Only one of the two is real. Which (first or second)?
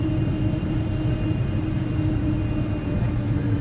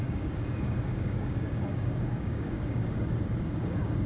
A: first